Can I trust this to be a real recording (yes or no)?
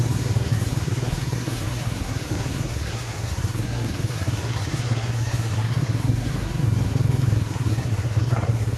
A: no